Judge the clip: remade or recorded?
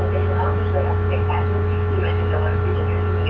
recorded